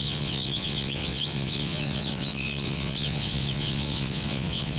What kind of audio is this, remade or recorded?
remade